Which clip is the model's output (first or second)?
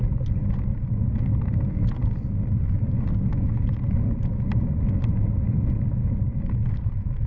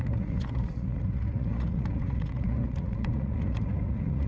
second